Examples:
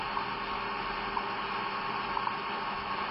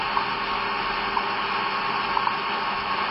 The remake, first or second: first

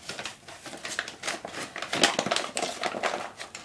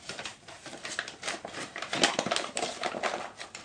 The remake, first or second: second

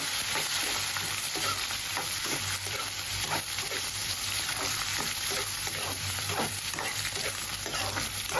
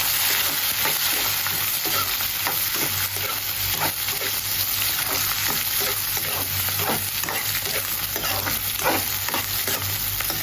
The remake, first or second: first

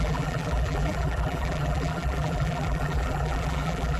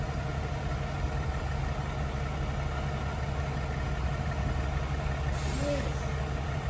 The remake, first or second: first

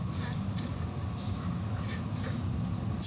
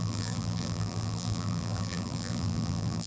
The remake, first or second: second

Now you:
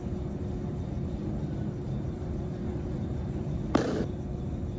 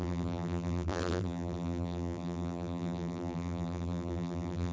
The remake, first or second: second